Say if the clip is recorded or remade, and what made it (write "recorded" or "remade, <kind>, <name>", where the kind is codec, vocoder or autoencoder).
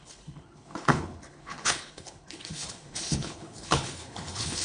remade, codec, HILCodec